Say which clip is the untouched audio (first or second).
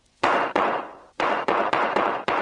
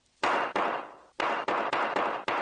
second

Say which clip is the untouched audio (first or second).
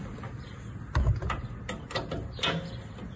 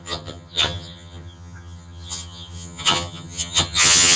first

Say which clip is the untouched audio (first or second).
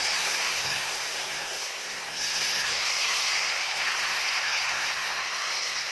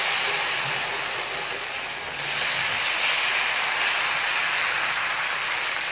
second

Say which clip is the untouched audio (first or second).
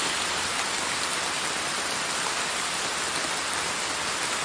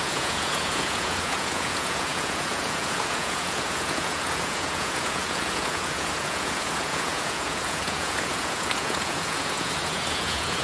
first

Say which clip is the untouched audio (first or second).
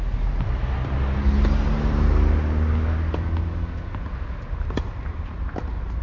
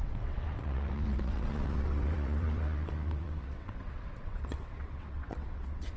first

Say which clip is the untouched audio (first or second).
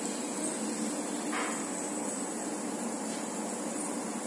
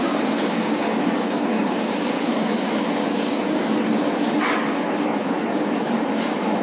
first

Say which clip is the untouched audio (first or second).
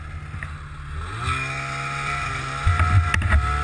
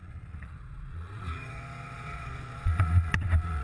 first